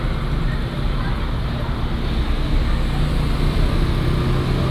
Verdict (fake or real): real